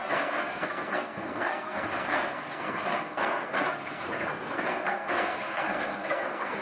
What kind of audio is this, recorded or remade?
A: remade